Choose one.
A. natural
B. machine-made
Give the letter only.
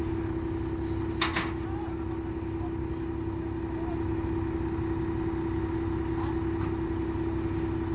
A